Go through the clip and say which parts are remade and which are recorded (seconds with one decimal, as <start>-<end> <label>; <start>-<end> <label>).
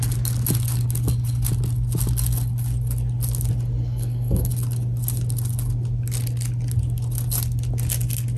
0.0-3.8 recorded; 3.8-4.5 remade; 4.5-8.4 recorded